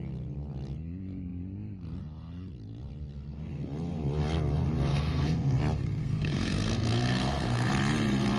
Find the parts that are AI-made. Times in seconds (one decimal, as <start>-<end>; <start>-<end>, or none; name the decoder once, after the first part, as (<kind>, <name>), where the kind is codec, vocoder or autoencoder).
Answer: 4.9-5.6 (codec, SNAC); 6.0-7.7